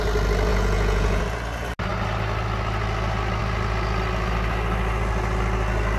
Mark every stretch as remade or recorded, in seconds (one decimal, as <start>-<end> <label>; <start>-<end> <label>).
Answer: 0.0-0.5 recorded; 0.5-1.2 remade; 1.2-6.0 recorded